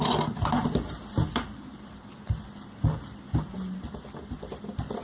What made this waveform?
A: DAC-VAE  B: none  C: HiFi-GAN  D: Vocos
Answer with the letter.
B